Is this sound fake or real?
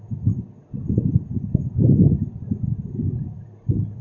real